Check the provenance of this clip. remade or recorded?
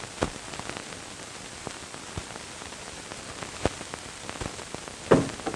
recorded